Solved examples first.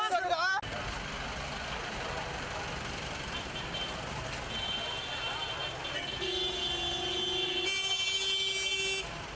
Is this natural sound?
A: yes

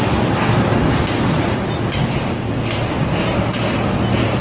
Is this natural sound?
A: yes